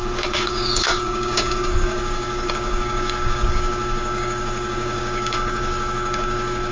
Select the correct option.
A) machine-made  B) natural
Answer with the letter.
A